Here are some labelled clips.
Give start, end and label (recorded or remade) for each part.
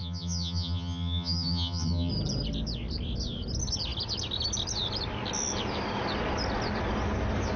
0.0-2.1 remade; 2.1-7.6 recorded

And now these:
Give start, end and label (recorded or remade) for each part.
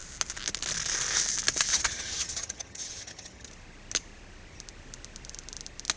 0.0-1.7 recorded; 1.7-3.5 remade; 3.5-6.0 recorded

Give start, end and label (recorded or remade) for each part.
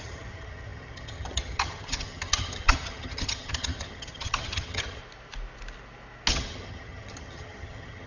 0.0-5.0 remade; 5.0-6.3 recorded; 6.3-8.1 remade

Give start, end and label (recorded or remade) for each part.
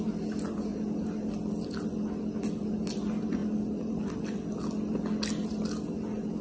0.0-6.4 recorded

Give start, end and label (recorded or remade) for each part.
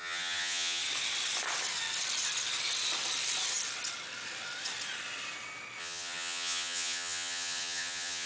0.0-0.8 remade; 0.8-5.8 recorded; 5.8-8.3 remade